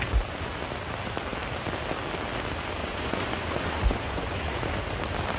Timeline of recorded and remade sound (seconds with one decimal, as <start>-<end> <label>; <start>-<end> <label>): 0.0-2.8 recorded; 2.8-4.7 remade; 4.7-5.4 recorded